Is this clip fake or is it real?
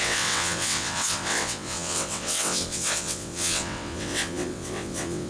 fake